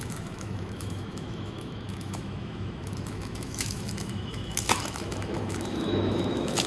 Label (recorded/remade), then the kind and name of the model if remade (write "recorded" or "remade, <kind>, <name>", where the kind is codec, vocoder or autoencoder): remade, autoencoder, DAC-VAE